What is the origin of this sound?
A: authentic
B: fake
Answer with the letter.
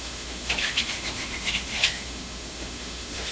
B